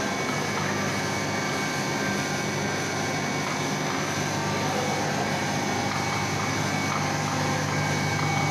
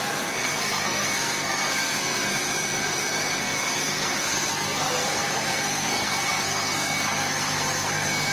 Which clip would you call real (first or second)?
first